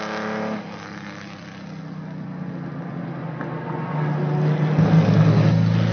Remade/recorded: recorded